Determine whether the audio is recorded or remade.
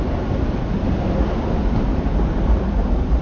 recorded